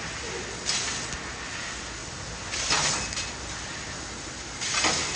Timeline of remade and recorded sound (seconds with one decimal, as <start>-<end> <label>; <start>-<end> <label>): 0.0-5.2 recorded